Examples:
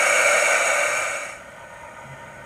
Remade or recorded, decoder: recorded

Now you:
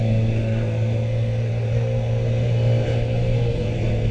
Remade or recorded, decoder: remade, codec, SNAC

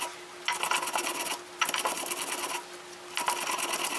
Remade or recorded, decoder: recorded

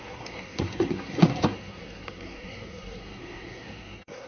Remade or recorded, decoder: remade, codec, SNAC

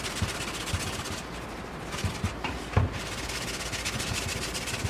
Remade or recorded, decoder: recorded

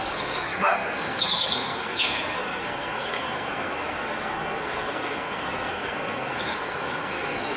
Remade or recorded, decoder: remade, codec, SNAC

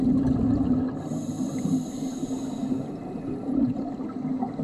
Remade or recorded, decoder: recorded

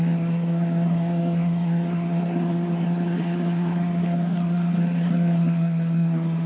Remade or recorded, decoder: remade, codec, SNAC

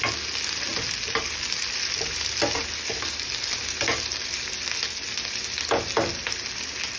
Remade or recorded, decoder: recorded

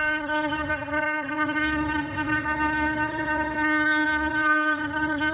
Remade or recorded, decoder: remade, codec, SNAC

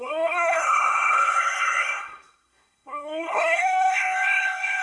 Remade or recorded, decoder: remade, codec, SNAC